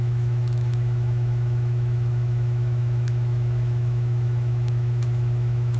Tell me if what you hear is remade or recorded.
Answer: remade